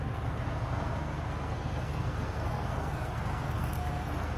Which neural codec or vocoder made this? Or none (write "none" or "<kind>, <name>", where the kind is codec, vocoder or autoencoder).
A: codec, SNAC